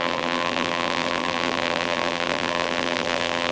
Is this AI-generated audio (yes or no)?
yes